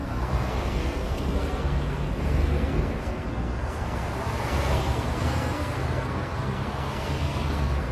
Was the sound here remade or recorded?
remade